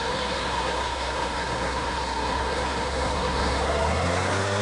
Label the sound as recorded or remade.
remade